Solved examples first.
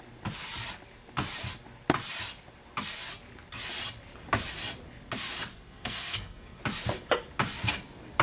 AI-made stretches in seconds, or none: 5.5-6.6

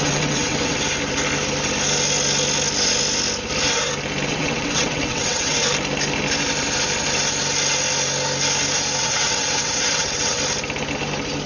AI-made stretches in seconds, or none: 0.0-0.8; 4.3-5.6; 9.0-10.4

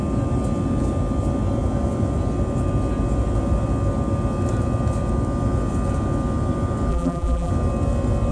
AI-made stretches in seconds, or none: 6.9-7.5

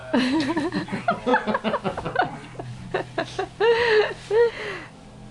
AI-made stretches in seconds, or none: 0.0-0.6

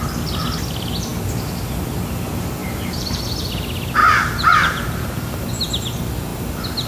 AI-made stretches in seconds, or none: 2.6-3.2; 4.0-5.5